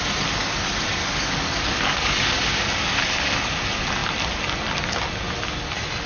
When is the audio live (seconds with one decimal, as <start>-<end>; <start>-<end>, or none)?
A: 0.0-1.0; 3.6-6.1

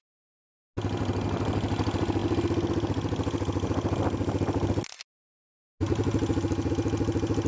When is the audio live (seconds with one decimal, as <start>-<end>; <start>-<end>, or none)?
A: 0.0-7.5

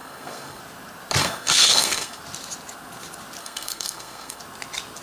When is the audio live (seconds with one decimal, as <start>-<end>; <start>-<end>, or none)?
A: 0.6-1.2; 2.2-3.4; 4.4-5.0

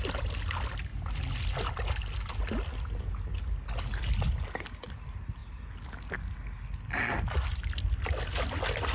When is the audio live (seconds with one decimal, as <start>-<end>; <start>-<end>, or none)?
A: 0.0-8.9

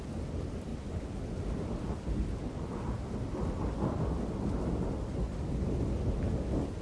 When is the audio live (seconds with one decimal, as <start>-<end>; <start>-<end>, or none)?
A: 0.0-6.8